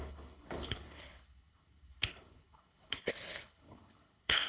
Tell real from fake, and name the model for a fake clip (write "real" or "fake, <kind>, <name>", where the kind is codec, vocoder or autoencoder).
fake, codec, HILCodec